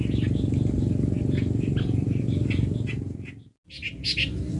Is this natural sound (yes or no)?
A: yes